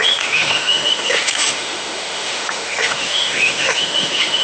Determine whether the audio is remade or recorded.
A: remade